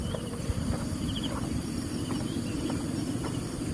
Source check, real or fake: fake